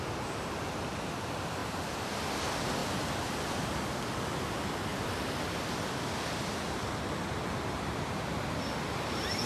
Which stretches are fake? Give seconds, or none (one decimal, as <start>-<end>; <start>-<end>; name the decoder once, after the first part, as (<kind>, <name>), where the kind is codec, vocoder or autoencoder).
1.6-2.3 (vocoder, BigVGAN v2); 4.9-8.3

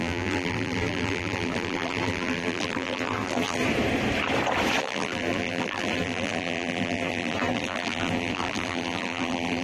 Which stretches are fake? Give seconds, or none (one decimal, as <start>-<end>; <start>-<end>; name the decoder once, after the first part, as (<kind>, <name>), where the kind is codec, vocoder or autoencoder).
0.0-3.6 (vocoder, BigVGAN v2); 4.8-9.6

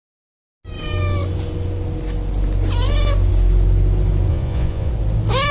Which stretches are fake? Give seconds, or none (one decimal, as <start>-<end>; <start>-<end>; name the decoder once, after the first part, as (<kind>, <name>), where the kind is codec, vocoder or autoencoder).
4.3-4.9 (vocoder, Vocos)